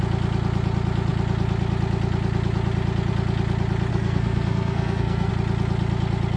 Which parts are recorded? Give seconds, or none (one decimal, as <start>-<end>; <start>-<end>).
0.0-3.9; 5.3-6.4